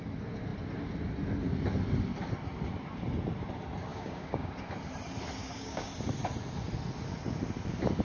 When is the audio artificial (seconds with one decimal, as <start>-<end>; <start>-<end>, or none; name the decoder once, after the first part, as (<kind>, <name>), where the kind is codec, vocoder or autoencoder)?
3.9-4.5 (codec, DAC); 5.4-5.9

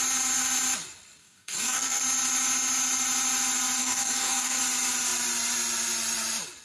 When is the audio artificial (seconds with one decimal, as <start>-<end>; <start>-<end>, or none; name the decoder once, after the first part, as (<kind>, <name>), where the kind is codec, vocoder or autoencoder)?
1.2-2.0 (codec, DAC); 3.8-4.6

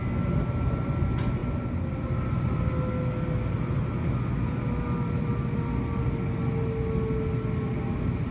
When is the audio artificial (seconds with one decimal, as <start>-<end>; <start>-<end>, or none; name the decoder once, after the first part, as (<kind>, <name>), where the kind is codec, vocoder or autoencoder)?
none

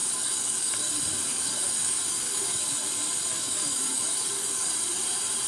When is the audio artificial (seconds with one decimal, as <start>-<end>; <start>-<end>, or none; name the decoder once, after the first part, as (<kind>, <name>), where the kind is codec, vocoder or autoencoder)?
0.0-0.9 (codec, DAC); 1.3-2.6; 3.3-4.7

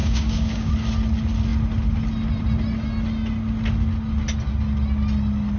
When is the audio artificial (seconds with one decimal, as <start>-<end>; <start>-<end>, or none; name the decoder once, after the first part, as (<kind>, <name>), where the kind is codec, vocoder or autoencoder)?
0.0-0.7 (codec, DAC)

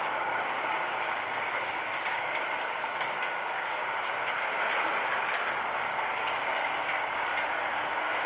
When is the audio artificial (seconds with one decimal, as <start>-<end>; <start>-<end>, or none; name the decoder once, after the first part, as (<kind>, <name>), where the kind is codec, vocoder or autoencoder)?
0.0-3.8 (codec, DAC); 5.2-7.3; 7.9-8.3

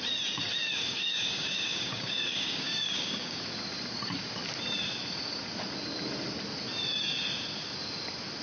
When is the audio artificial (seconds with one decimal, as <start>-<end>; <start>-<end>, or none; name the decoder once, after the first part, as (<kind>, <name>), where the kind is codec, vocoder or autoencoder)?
0.6-3.4 (codec, DAC)